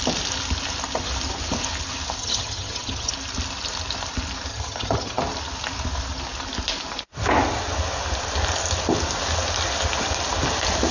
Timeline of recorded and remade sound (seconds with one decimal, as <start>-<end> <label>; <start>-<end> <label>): 0.0-2.2 recorded; 2.2-3.1 remade; 3.1-4.5 recorded; 4.5-5.2 remade; 5.2-10.9 recorded